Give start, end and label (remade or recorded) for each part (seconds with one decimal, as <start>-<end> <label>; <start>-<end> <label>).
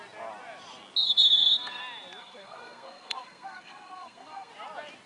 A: 0.0-1.0 recorded; 1.0-1.8 remade; 1.8-2.2 recorded; 2.2-4.5 remade; 4.5-5.1 recorded